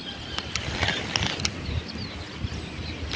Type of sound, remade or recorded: recorded